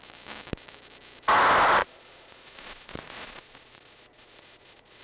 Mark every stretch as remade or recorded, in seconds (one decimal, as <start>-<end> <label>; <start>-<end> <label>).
0.0-1.8 recorded; 1.8-5.0 remade